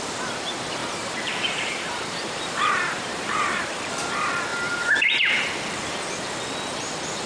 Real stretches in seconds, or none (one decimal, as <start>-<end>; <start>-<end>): 0.0-0.8; 3.9-7.3